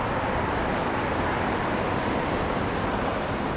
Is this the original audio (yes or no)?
yes